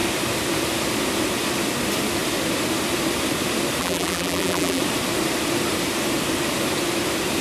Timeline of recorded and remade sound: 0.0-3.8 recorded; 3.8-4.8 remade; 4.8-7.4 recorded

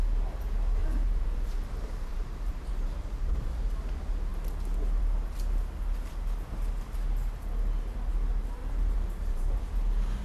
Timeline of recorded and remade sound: 0.0-0.8 recorded; 0.8-3.5 remade; 3.5-8.6 recorded; 8.6-9.6 remade; 9.6-10.2 recorded